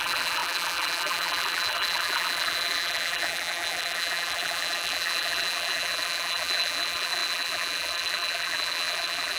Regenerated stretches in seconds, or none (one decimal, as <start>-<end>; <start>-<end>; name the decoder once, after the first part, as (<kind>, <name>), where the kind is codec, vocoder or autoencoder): 0.0-9.4 (vocoder, BigVGAN v2)